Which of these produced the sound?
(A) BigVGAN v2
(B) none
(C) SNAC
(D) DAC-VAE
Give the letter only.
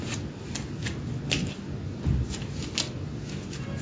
B